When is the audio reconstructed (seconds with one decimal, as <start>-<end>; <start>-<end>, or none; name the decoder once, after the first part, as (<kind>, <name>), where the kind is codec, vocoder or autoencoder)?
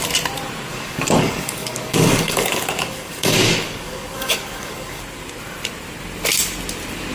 0.7-5.0 (codec, DAC)